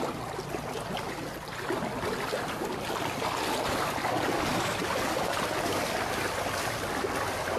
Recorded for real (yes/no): no